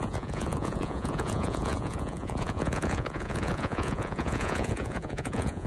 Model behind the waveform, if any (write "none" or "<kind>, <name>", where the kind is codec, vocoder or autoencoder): vocoder, Vocos